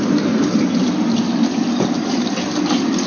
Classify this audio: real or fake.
real